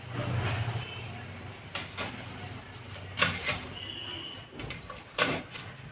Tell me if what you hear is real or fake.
real